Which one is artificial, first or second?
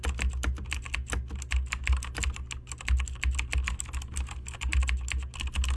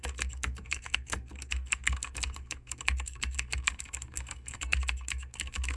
second